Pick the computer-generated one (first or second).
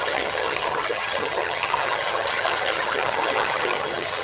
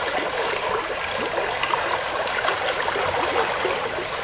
first